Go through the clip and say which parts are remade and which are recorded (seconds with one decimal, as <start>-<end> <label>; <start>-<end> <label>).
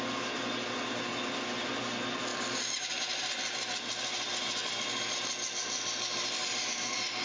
0.0-7.2 recorded